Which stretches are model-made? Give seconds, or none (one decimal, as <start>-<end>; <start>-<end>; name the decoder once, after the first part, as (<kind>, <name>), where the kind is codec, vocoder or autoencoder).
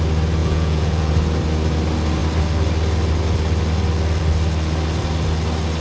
0.4-1.1 (vocoder, Vocos)